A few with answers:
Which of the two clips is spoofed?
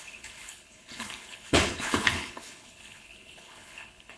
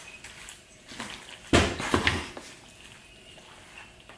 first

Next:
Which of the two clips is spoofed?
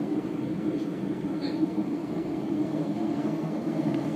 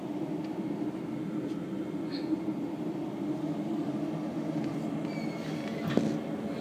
first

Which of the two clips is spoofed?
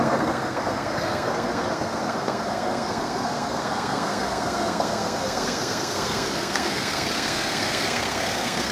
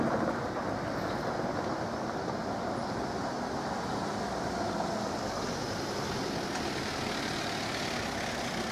first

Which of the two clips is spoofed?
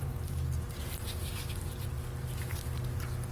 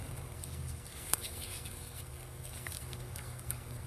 second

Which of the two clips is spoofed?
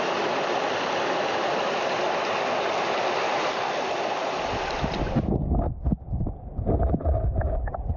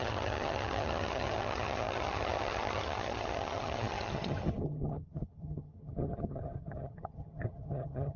second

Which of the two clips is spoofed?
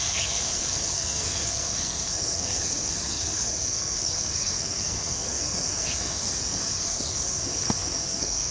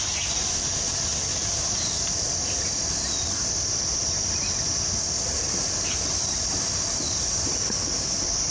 first